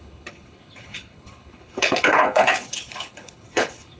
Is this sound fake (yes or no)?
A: yes